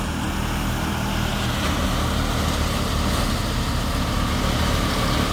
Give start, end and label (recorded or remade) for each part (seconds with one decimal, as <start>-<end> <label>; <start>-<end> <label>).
0.0-5.3 recorded